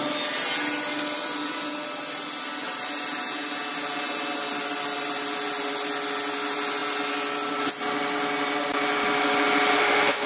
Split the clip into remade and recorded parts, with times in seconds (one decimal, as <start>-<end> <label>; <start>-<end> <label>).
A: 0.0-9.7 recorded; 9.7-10.3 remade